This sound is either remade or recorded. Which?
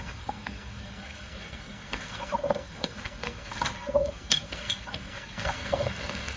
remade